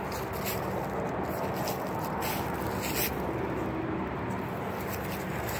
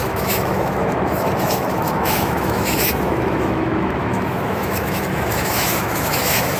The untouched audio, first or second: first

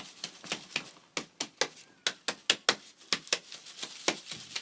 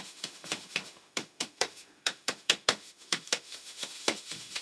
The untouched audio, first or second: first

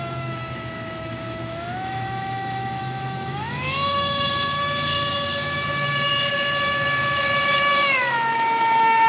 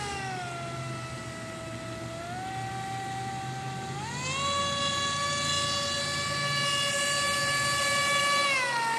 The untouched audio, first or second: second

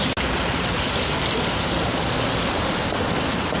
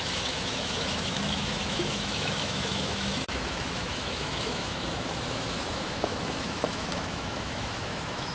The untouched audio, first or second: first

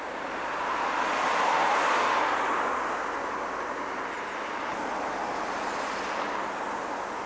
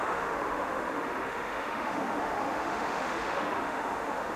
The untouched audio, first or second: first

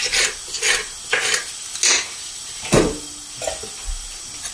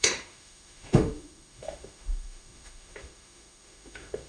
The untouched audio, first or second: first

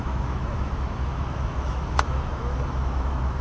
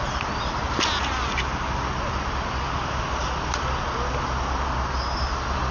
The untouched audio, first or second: second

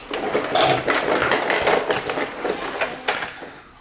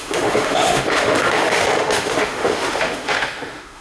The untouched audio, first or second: first